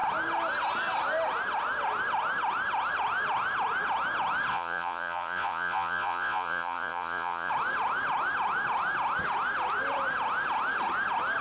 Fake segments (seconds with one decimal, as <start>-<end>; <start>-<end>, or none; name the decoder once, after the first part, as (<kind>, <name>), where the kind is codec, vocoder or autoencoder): 4.5-7.5 (vocoder, Vocos)